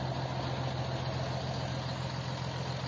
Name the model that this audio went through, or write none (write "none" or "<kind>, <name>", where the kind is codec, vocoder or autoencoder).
none